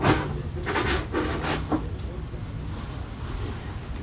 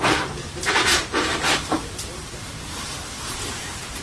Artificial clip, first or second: second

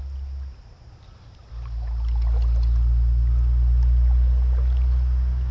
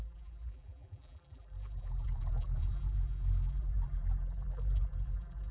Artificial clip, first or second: second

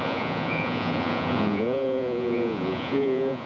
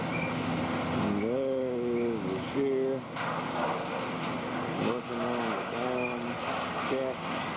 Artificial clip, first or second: first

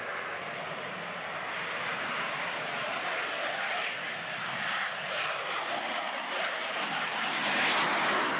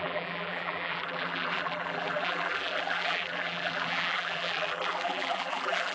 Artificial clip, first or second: second